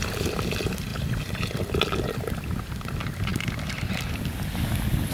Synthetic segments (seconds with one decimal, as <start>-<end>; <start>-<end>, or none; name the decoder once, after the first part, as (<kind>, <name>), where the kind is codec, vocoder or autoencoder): none